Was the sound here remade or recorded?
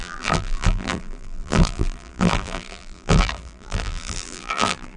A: remade